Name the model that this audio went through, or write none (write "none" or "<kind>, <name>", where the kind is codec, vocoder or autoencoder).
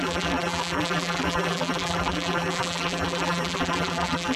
vocoder, BigVGAN v2